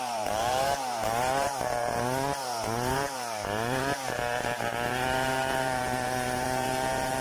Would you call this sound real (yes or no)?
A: no